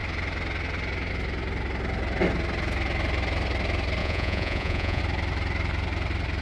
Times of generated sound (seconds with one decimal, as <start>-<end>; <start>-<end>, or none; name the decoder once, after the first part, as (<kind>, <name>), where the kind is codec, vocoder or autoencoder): 4.0-5.0 (vocoder, Vocos)